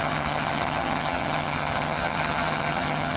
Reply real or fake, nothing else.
fake